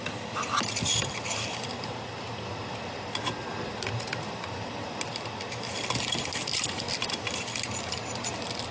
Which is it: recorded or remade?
recorded